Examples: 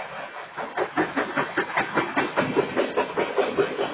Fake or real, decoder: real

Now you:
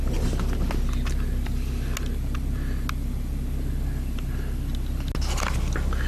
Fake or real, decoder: real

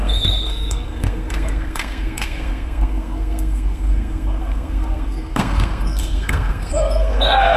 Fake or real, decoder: fake, codec, SNAC